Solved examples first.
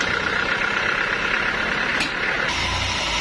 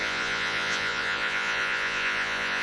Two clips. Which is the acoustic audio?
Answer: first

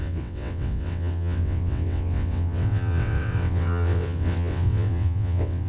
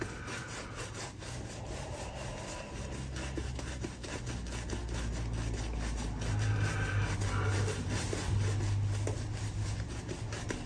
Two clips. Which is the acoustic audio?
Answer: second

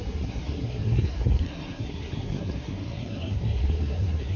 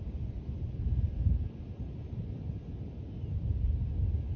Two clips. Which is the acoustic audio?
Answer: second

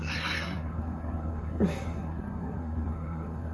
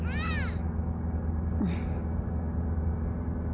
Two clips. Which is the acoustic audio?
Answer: second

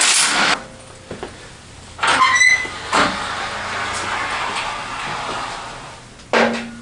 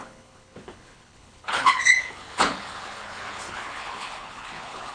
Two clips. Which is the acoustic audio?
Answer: first